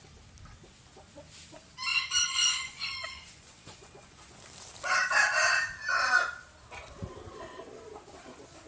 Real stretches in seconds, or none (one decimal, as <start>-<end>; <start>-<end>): 0.0-1.9; 4.4-8.7